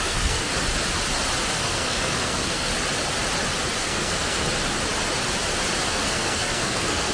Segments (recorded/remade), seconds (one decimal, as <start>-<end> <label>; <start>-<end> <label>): 0.0-0.5 remade; 0.5-1.5 recorded; 1.5-2.7 remade; 2.7-3.8 recorded; 3.8-4.4 remade; 4.4-5.9 recorded; 5.9-7.1 remade